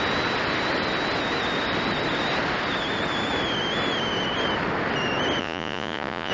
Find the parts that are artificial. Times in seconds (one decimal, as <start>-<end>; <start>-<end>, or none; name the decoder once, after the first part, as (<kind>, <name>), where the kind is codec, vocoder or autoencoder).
5.4-6.3 (vocoder, Vocos)